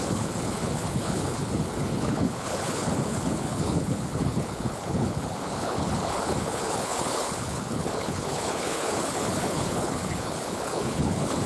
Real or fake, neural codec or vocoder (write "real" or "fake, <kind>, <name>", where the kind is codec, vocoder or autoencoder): fake, codec, HILCodec